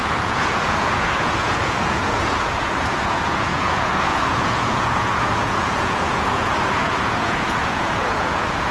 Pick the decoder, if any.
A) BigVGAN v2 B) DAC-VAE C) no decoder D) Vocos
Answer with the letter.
D